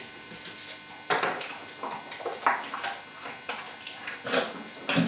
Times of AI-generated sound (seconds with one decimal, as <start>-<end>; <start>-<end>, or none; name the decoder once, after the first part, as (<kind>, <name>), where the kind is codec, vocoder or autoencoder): none